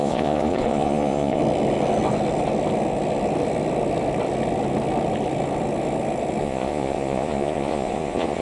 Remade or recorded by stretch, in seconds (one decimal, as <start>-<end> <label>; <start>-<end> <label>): 0.0-1.4 remade; 1.4-6.4 recorded; 6.4-8.4 remade